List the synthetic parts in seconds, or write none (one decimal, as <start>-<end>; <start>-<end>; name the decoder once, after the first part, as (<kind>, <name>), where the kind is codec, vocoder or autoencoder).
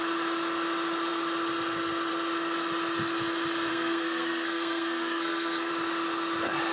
3.7-5.7 (codec, SNAC)